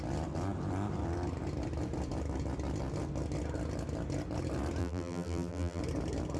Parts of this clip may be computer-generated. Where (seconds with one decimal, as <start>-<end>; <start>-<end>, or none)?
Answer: 4.8-5.8